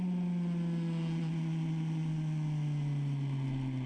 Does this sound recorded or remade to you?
recorded